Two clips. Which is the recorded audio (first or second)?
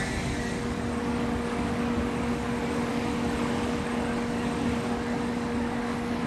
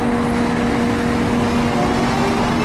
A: second